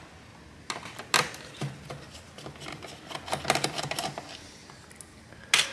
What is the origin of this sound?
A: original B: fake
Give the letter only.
A